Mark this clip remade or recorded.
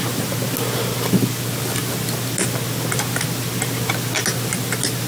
recorded